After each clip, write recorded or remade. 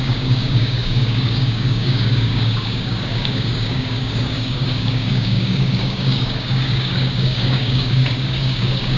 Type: remade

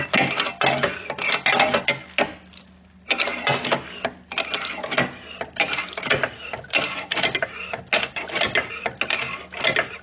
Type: recorded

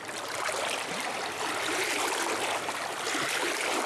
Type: recorded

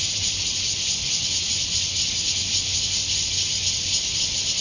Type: remade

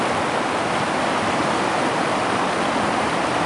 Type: recorded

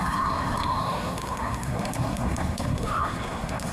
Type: remade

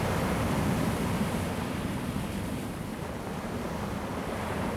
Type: recorded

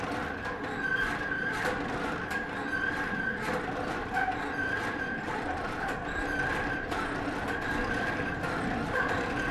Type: recorded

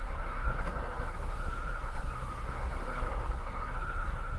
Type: remade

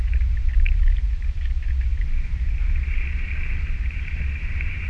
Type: recorded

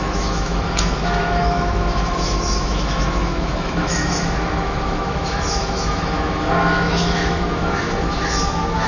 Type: remade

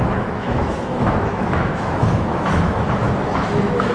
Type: remade